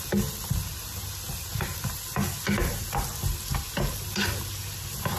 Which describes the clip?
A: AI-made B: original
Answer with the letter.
B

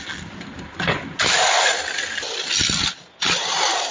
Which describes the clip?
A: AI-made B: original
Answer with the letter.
B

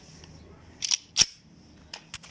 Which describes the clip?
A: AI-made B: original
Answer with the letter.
B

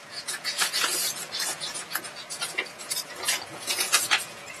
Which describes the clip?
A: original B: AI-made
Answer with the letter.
B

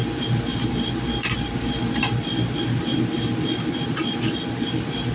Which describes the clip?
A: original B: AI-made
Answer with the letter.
A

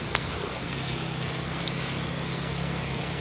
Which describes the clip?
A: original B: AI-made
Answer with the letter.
B